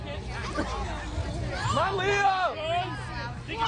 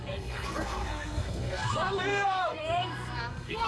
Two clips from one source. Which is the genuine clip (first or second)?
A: first